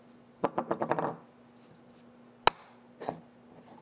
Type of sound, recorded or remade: recorded